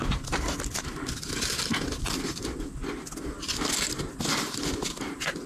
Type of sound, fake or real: real